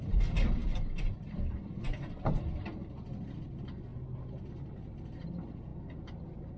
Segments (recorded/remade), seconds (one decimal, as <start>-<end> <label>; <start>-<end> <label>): 0.0-6.6 recorded